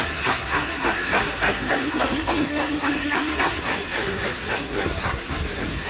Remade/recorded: remade